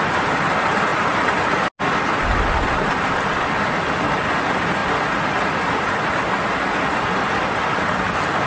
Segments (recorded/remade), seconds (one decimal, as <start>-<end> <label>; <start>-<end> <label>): 0.0-8.5 recorded

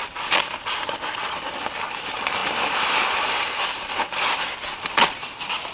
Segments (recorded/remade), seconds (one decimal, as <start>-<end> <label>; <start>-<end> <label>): 0.0-1.8 recorded; 1.8-2.4 remade; 2.4-4.6 recorded; 4.6-5.7 remade